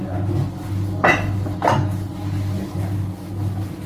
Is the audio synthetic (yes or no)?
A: no